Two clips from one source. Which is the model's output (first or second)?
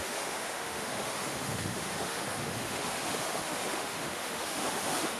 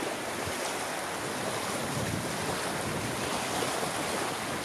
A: first